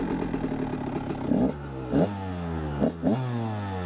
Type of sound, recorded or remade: recorded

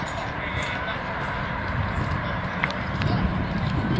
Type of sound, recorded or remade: recorded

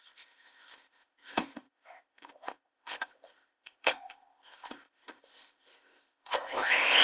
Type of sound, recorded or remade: remade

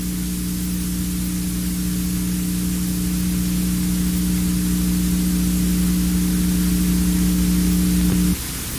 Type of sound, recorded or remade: recorded